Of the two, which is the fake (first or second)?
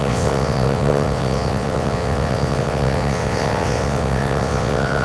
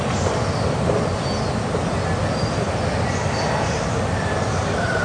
first